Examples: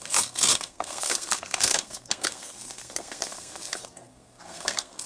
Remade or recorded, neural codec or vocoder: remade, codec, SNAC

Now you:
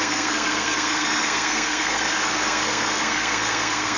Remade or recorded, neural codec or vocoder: remade, codec, SNAC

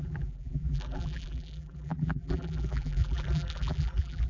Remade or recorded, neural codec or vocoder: remade, vocoder, BigVGAN v2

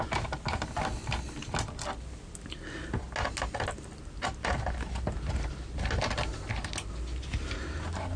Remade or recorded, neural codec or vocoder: recorded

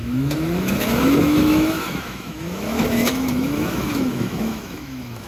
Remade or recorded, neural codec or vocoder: remade, autoencoder, DAC-VAE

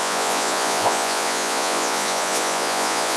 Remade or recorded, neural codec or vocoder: remade, vocoder, Vocos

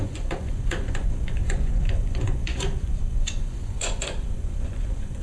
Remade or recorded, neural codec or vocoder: remade, vocoder, Vocos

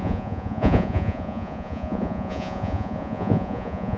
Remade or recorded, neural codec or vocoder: remade, vocoder, Vocos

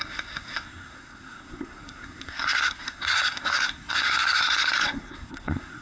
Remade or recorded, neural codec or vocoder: remade, codec, SNAC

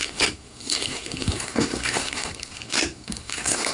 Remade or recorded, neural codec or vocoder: remade, codec, SNAC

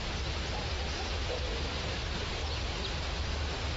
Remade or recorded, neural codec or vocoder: remade, vocoder, BigVGAN v2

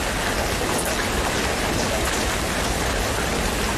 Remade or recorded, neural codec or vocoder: recorded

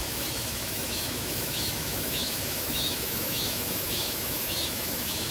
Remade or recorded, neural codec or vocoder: remade, autoencoder, DAC-VAE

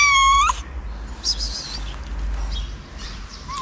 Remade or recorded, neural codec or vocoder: recorded